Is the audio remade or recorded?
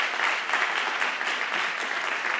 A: recorded